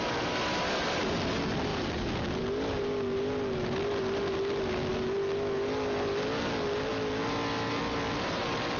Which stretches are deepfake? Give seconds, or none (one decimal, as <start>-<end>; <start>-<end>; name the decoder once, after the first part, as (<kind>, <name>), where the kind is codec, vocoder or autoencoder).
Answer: none